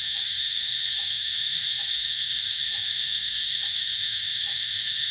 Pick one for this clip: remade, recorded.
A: remade